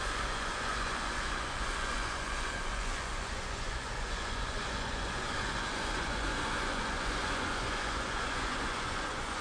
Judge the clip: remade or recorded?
remade